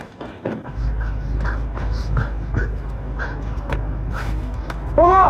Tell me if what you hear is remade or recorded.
remade